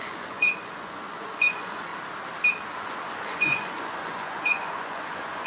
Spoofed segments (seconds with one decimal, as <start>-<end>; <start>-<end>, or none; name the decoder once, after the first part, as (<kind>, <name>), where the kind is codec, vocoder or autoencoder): 0.0-1.9 (vocoder, Vocos); 2.6-5.5